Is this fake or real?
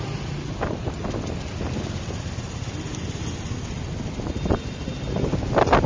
real